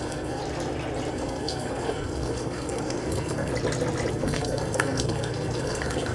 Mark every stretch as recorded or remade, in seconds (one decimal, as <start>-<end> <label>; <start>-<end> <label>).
0.0-0.4 remade; 0.4-1.1 recorded; 1.1-3.5 remade; 3.5-4.1 recorded; 4.1-6.1 remade